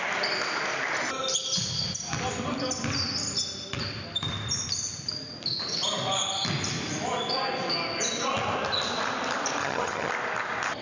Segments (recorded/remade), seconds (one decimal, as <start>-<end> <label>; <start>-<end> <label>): 0.0-9.6 recorded; 9.6-10.1 remade; 10.1-10.8 recorded